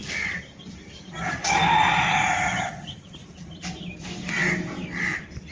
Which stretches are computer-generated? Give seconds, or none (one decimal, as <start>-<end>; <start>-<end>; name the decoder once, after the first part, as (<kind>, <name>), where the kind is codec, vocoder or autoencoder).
none